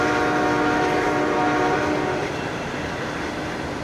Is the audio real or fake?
real